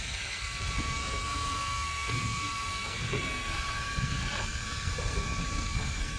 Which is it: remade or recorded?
remade